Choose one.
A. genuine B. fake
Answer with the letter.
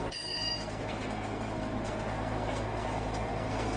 B